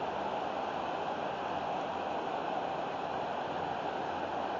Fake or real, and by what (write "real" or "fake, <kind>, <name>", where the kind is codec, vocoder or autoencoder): real